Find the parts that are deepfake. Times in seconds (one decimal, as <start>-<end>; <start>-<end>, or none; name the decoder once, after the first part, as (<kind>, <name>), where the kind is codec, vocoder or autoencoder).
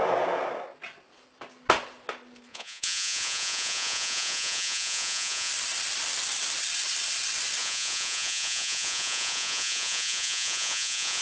2.5-5.5 (vocoder, Vocos); 7.6-11.2